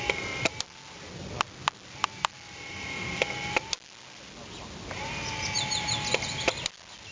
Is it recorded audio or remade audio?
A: recorded